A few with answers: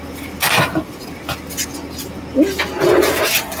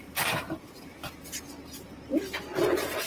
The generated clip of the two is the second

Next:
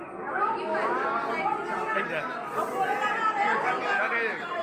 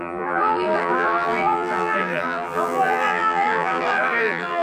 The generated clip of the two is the second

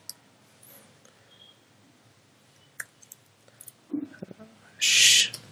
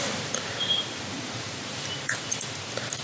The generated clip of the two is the second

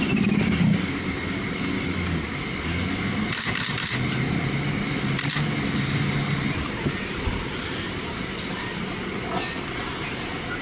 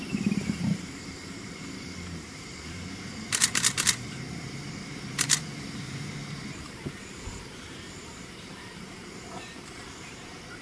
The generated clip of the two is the second